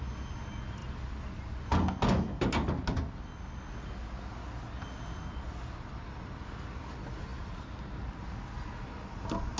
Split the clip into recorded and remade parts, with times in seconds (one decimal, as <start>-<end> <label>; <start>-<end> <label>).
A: 0.0-9.6 recorded